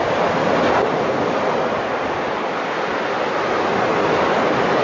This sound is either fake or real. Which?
real